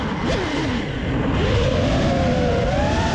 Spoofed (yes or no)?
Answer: no